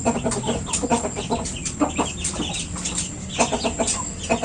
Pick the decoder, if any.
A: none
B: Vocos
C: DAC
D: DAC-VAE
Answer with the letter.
A